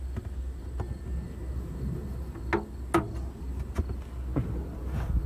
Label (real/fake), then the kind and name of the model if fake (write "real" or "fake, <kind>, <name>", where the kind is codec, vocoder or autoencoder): real